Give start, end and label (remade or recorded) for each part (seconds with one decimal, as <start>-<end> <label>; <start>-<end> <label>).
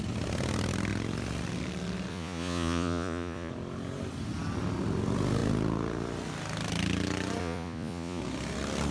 0.0-2.1 recorded; 2.1-3.5 remade; 3.5-7.4 recorded; 7.4-8.2 remade; 8.2-8.9 recorded